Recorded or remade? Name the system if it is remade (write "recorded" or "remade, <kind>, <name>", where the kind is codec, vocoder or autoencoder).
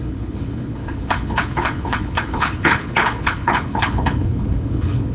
remade, codec, HILCodec